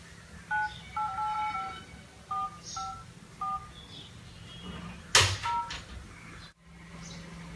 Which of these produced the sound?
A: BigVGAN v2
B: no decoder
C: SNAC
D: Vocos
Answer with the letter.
B